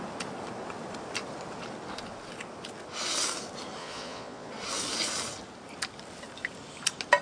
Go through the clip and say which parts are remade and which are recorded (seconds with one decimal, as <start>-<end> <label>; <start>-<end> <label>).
0.0-3.8 recorded; 3.8-4.5 remade; 4.5-7.2 recorded